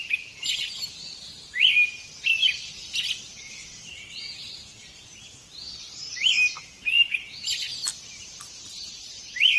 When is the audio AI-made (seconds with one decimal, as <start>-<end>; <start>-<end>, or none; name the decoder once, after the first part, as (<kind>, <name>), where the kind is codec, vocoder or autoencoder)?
none